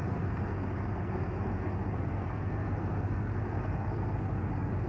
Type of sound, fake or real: fake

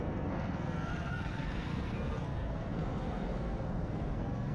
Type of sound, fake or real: fake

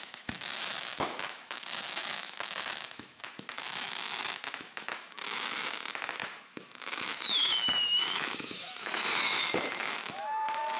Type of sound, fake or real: fake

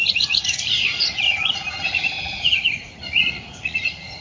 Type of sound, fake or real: fake